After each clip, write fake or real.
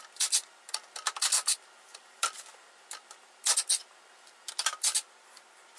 real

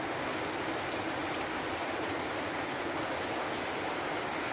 real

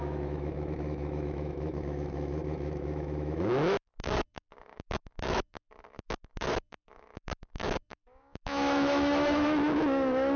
fake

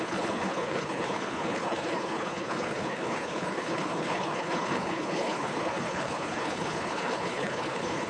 fake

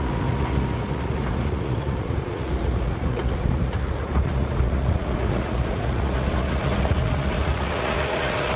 fake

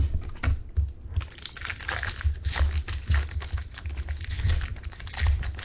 real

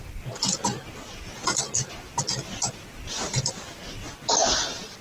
real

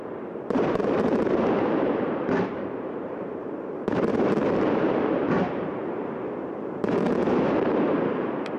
fake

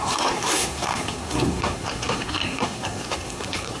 fake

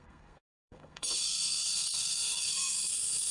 fake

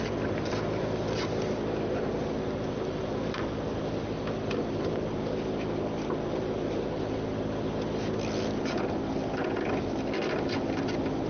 real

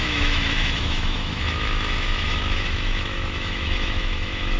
fake